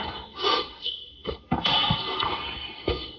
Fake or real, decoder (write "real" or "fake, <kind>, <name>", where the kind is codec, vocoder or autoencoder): fake, codec, SNAC